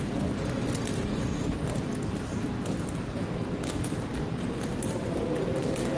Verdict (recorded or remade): recorded